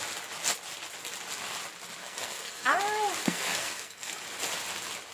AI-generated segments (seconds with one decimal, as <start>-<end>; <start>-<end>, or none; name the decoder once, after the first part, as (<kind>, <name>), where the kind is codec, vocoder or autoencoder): 2.0-2.8 (codec, SNAC); 3.2-4.2